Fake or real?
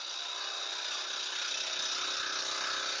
real